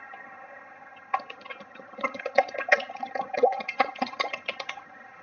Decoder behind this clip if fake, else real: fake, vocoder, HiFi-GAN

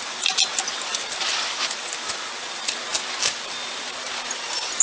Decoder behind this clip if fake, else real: real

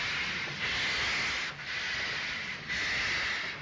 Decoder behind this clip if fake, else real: real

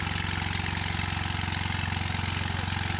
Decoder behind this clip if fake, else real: real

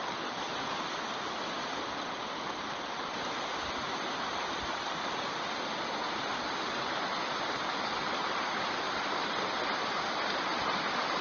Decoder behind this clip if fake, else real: real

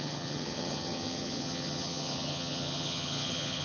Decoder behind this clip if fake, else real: fake, vocoder, HiFi-GAN